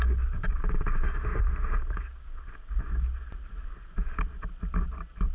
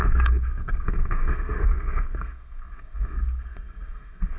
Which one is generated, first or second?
second